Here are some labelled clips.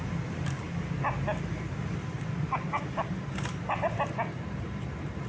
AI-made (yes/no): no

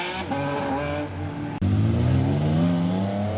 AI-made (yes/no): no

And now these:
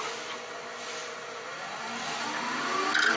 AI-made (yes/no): no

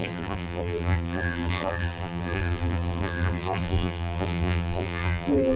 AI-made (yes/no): yes